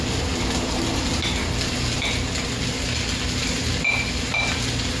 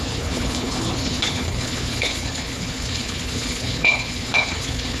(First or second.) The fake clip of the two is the second